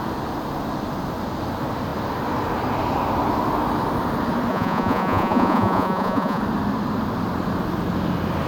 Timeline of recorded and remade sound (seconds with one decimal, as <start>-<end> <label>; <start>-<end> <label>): 0.0-4.5 recorded; 4.5-6.4 remade; 6.4-8.5 recorded